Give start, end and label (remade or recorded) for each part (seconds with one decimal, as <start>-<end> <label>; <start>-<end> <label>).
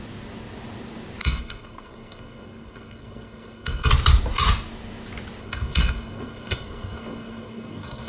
0.0-1.2 recorded; 1.2-3.9 remade; 3.9-5.4 recorded; 5.4-8.1 remade